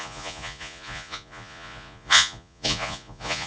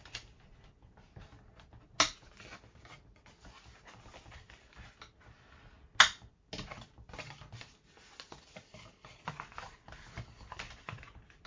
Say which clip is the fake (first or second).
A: first